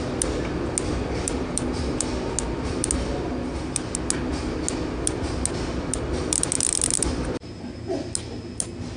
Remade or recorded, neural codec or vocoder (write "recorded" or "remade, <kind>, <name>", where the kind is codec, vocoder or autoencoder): recorded